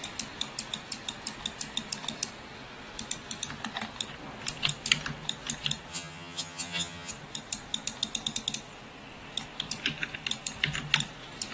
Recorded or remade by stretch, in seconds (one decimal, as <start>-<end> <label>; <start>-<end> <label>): 0.0-5.9 recorded; 5.9-7.1 remade; 7.1-11.5 recorded